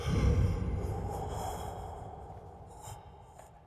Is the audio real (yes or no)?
yes